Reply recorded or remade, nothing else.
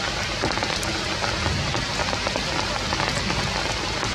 recorded